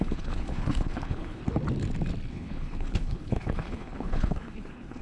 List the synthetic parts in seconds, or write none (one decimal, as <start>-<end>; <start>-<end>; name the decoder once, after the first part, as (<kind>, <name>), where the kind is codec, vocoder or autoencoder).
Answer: 0.0-1.4 (codec, HILCodec); 2.3-5.0

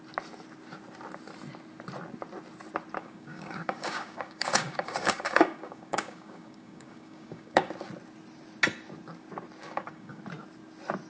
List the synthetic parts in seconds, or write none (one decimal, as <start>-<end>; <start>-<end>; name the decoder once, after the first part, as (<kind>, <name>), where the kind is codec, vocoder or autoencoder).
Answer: 3.0-7.7 (codec, DAC); 9.6-10.2

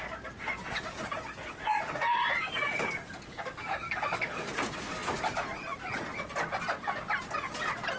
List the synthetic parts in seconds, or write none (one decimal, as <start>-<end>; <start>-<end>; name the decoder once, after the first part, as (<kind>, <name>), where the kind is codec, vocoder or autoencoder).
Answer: 2.4-4.5 (codec, DAC)

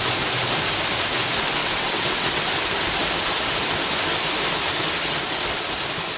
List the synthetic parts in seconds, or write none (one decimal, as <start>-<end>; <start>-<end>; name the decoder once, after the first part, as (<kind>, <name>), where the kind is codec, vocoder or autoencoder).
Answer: 1.6-2.4 (vocoder, WaveNeXt)

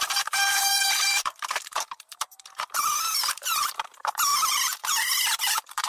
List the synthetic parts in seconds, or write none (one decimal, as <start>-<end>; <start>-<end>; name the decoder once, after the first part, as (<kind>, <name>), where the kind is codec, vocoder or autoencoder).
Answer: 0.0-5.9 (vocoder, BigVGAN v2)